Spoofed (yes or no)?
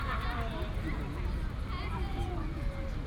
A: no